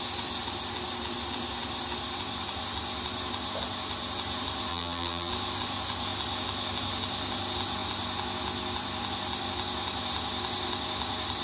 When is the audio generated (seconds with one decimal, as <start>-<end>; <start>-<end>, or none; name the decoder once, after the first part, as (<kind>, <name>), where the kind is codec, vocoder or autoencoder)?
4.7-5.3 (vocoder, BigVGAN v2)